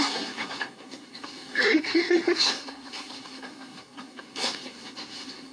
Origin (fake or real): fake